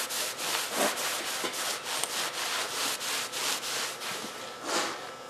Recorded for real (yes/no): yes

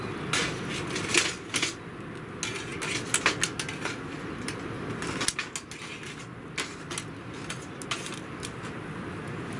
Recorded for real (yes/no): yes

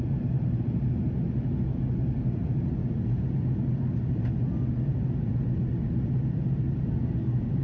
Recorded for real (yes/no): yes